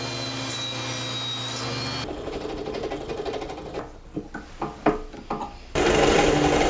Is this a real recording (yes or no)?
yes